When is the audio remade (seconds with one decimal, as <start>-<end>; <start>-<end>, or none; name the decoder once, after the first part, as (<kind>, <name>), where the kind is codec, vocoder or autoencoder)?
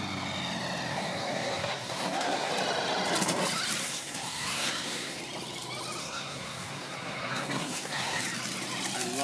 0.9-2.5 (codec, SNAC); 3.8-5.2; 6.0-8.2